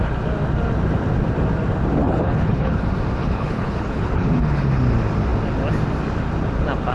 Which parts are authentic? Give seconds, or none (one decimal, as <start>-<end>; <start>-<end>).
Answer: 0.0-2.0; 2.8-3.2; 4.7-6.9